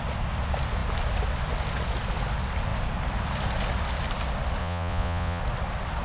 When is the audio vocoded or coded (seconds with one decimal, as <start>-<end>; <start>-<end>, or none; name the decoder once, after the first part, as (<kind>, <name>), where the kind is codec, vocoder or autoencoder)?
4.6-5.4 (vocoder, Vocos)